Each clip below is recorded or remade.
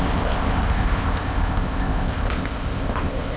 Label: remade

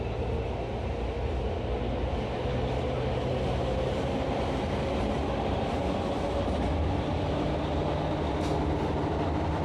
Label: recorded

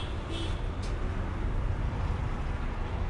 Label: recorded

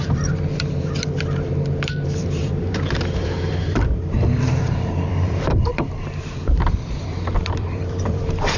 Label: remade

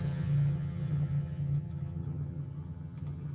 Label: remade